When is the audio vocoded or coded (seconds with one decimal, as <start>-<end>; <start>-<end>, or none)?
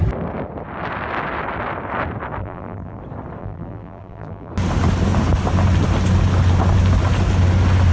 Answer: 2.4-3.0; 3.4-4.5